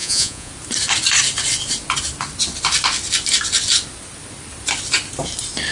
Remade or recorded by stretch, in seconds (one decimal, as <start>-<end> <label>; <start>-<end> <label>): 0.0-0.5 remade; 0.5-5.7 recorded